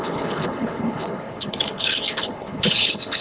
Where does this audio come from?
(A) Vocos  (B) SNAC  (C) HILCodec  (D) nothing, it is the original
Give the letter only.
C